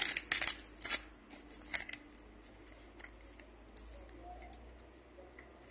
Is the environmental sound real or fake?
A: real